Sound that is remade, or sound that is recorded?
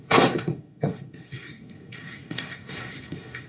remade